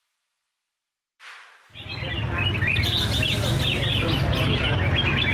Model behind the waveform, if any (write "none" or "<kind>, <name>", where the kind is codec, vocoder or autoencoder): none